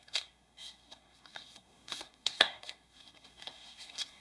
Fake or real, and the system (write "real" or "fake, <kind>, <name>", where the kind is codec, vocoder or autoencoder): fake, codec, SNAC